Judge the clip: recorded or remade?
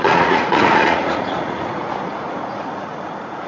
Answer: remade